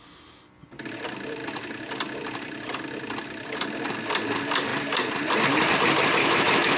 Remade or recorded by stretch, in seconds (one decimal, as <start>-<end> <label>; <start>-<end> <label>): 0.0-6.2 recorded; 6.2-6.8 remade